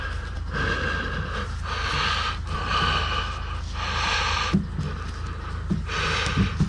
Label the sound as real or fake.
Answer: real